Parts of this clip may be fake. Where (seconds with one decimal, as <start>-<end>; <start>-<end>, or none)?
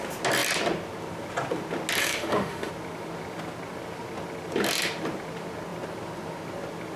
2.0-2.7